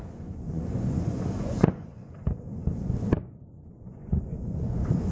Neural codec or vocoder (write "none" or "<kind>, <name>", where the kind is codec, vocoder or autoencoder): vocoder, Vocos